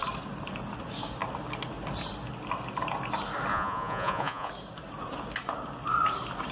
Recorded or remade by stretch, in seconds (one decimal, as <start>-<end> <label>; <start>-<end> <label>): 0.0-3.5 recorded; 3.5-4.5 remade; 4.5-6.5 recorded